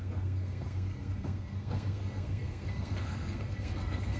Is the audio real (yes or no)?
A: no